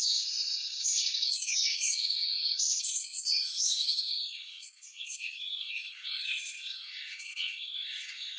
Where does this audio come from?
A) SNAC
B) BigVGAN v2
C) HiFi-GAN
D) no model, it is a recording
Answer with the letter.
A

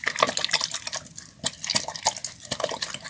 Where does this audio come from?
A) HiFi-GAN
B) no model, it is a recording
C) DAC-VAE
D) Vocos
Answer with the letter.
B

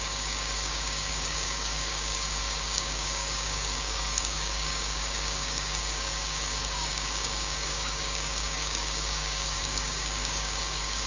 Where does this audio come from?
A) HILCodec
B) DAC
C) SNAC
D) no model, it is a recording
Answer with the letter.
B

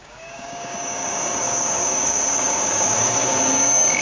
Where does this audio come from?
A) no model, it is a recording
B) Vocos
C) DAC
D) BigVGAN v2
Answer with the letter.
C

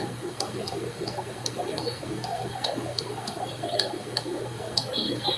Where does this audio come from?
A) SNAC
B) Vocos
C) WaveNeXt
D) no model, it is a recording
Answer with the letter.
A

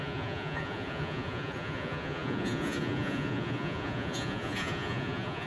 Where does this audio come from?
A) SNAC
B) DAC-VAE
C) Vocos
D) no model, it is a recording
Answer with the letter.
C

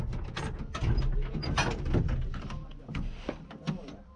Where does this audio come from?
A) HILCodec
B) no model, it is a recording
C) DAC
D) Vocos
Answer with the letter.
B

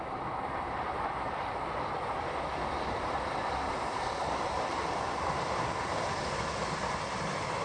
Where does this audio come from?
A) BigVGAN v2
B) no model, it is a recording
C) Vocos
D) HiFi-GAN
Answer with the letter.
B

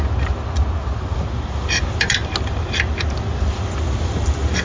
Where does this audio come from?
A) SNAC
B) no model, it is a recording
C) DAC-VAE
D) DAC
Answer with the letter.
B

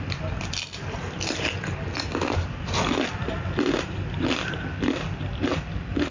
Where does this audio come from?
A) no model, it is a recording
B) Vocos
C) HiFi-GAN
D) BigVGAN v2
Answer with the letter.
A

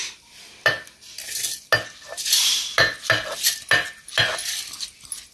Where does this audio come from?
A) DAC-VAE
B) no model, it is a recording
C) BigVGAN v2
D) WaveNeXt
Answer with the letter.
B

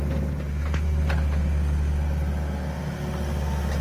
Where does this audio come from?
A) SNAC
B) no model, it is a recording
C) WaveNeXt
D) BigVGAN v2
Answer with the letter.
B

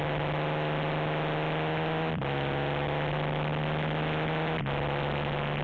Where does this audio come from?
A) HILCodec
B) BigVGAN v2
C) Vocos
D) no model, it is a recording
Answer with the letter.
D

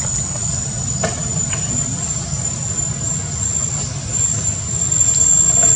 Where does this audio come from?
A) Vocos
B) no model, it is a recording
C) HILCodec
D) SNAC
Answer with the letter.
B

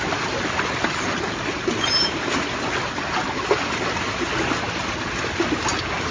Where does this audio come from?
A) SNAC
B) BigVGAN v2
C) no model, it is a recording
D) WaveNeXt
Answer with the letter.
C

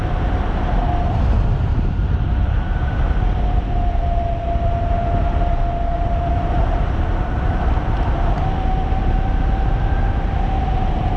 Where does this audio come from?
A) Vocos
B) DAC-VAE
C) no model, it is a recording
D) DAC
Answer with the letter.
C